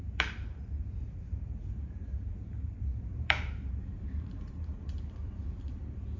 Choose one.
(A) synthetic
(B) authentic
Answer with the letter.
A